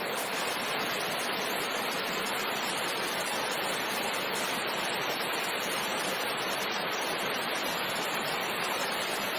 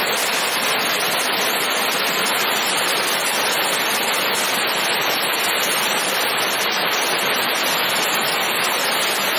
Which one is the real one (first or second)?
second